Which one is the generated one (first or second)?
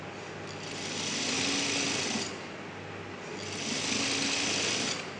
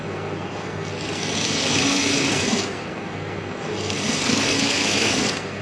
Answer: second